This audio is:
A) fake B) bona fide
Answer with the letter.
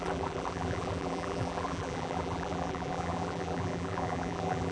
A